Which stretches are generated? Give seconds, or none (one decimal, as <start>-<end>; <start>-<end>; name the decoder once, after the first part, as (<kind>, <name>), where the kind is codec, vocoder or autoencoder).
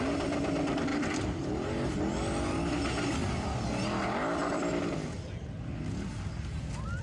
0.9-1.5 (vocoder, BigVGAN v2)